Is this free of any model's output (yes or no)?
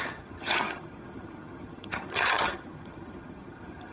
no